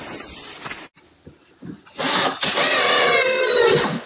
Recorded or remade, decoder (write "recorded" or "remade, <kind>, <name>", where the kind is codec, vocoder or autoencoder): recorded